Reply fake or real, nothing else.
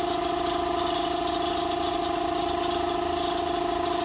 real